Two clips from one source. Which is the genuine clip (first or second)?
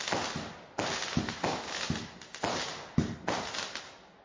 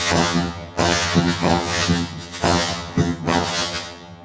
first